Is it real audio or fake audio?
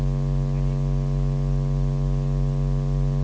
real